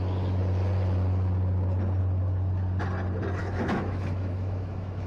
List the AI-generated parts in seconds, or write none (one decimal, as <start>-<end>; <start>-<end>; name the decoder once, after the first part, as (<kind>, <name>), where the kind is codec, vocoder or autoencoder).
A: 3.4-5.1 (autoencoder, DAC-VAE)